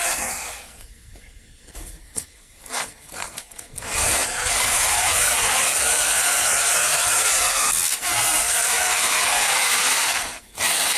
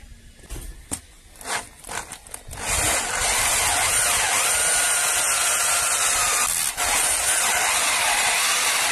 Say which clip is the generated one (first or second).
first